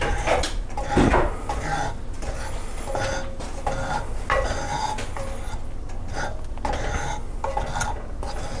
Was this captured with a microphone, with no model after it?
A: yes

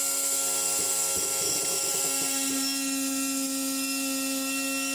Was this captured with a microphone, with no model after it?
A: yes